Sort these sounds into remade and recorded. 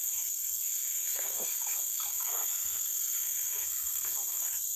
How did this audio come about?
remade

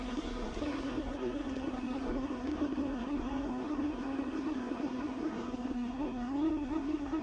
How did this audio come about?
remade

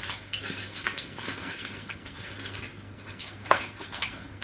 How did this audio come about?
remade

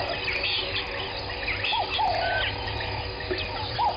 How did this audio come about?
recorded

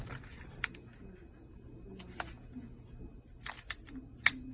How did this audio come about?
recorded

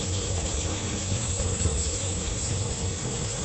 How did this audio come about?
remade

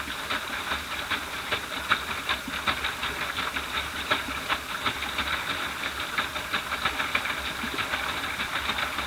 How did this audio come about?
recorded